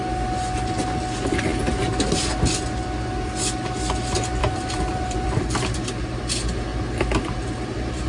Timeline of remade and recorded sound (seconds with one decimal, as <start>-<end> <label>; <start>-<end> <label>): 0.0-4.4 recorded; 4.4-5.9 remade; 5.9-8.1 recorded

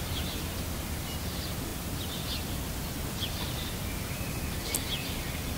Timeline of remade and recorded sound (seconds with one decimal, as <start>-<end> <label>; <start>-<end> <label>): 0.0-5.6 recorded